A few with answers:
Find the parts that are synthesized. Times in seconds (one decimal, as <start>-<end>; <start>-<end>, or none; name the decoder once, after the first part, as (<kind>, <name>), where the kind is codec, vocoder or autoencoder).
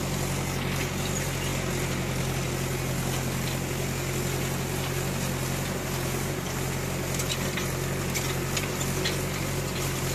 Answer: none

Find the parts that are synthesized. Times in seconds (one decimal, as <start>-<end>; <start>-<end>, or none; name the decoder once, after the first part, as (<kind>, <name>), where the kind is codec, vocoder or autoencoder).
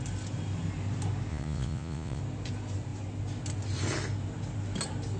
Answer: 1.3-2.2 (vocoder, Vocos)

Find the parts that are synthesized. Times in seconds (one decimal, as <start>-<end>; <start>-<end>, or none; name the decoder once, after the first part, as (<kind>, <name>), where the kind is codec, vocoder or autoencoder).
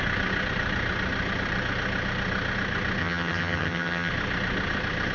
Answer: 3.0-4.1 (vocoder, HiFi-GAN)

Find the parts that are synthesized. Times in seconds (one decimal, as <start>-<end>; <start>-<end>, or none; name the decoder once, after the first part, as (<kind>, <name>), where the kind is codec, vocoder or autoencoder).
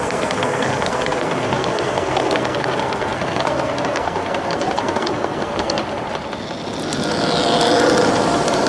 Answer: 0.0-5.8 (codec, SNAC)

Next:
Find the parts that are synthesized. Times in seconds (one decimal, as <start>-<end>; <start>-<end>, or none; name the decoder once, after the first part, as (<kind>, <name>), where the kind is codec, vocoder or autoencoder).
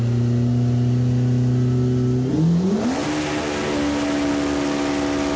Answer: none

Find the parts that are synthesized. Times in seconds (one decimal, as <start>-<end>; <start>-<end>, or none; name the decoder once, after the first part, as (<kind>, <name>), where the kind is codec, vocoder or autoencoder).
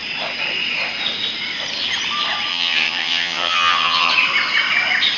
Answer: 2.5-4.1 (vocoder, HiFi-GAN)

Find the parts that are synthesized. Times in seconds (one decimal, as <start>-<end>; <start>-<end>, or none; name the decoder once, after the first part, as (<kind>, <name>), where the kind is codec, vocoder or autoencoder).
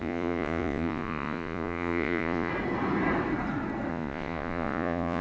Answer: 0.0-2.5 (vocoder, Vocos); 3.9-5.2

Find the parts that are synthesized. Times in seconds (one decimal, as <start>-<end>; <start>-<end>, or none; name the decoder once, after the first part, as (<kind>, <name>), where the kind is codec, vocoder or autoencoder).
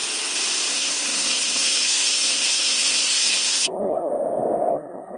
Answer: 0.7-4.1 (codec, SNAC); 4.7-5.2